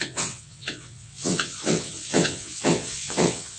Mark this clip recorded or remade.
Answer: remade